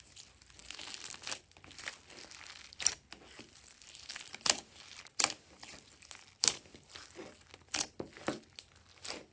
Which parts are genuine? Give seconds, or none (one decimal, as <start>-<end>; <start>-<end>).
0.0-9.3